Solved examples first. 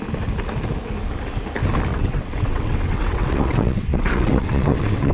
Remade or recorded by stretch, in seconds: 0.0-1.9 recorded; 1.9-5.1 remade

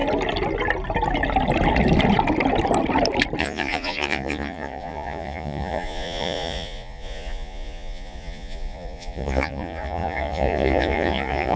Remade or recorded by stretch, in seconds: 0.0-3.4 recorded; 3.4-11.6 remade

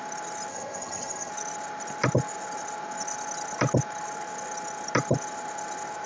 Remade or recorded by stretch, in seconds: 0.0-0.5 recorded; 0.5-1.3 remade; 1.3-6.1 recorded

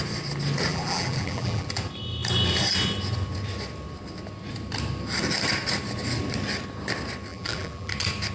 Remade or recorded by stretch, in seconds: 0.0-0.7 recorded; 0.7-1.8 remade; 1.8-7.3 recorded; 7.3-7.9 remade; 7.9-8.3 recorded